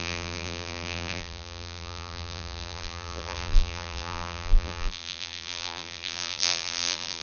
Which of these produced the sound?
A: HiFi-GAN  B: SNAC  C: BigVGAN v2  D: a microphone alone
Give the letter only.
C